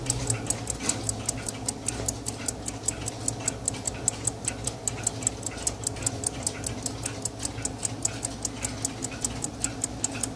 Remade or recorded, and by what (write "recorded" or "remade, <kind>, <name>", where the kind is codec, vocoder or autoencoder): recorded